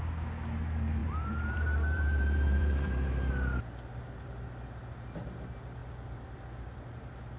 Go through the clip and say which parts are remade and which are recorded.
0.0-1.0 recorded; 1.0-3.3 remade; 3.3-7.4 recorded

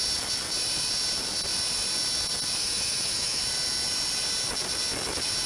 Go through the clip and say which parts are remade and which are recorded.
0.0-2.6 recorded; 2.6-3.4 remade; 3.4-5.5 recorded

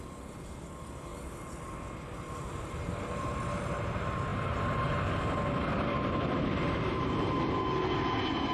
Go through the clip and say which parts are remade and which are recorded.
0.0-2.4 recorded; 2.4-3.4 remade; 3.4-8.5 recorded

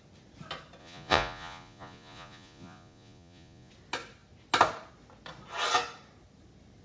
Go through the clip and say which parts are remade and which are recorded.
0.0-0.8 recorded; 0.8-3.7 remade; 3.7-6.8 recorded

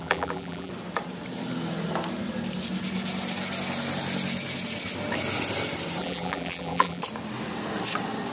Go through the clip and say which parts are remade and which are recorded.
0.0-0.7 remade; 0.7-6.0 recorded; 6.0-7.0 remade; 7.0-8.3 recorded

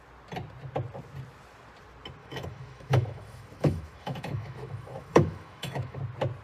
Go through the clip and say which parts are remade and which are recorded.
0.0-2.2 recorded; 2.2-6.0 remade; 6.0-6.4 recorded

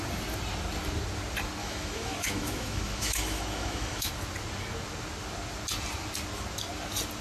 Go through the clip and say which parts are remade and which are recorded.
0.0-1.6 recorded; 1.6-4.1 remade; 4.1-7.2 recorded

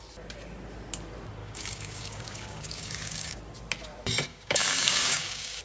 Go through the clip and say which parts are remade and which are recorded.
0.0-1.4 recorded; 1.4-3.4 remade; 3.4-4.3 recorded; 4.3-5.6 remade